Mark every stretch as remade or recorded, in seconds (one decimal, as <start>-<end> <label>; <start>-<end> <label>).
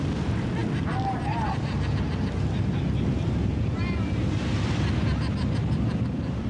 0.0-6.5 recorded